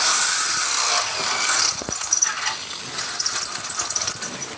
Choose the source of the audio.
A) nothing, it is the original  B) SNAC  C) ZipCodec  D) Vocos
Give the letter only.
A